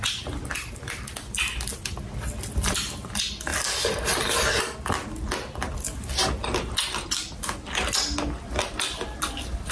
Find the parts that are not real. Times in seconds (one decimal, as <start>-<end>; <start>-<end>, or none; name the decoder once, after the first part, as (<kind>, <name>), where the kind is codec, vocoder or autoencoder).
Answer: none